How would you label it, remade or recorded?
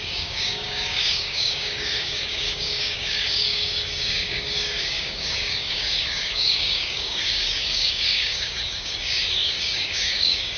remade